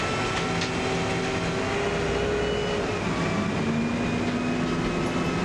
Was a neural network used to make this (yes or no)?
no